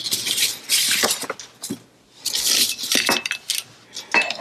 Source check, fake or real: real